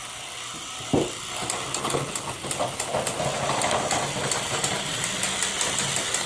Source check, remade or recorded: recorded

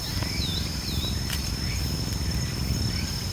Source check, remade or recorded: recorded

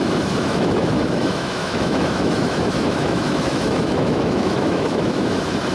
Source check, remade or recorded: remade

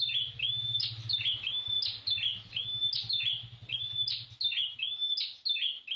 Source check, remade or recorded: recorded